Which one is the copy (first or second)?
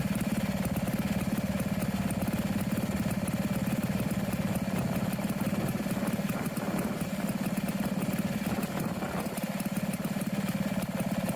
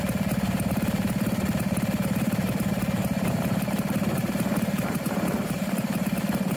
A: second